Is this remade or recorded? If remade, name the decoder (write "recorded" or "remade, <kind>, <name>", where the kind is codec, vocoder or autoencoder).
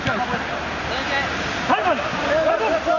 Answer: recorded